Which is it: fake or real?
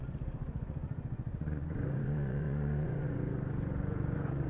fake